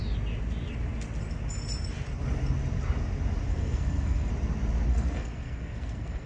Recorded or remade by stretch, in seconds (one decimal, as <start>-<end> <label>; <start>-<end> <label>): 0.0-3.5 recorded; 3.5-4.3 remade; 4.3-4.9 recorded; 4.9-6.3 remade